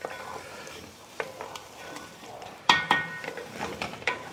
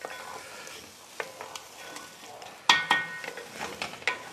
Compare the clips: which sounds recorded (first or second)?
second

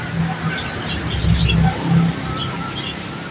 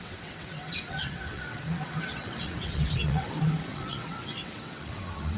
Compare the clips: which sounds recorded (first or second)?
first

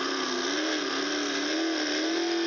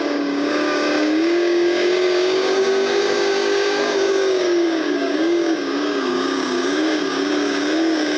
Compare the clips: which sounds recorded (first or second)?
first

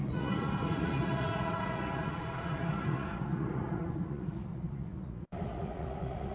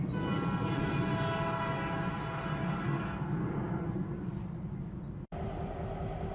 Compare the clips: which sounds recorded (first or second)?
second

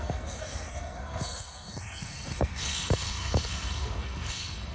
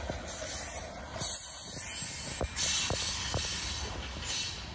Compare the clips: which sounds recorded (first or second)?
second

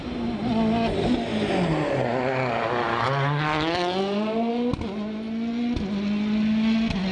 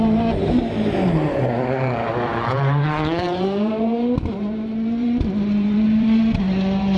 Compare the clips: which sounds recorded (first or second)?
first